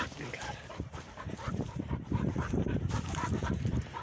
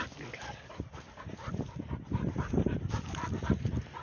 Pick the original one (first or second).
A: second